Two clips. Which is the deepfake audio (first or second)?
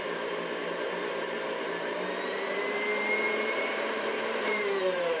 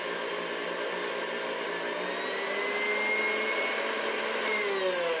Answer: first